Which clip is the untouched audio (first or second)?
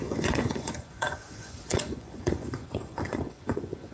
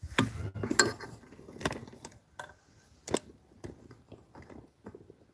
second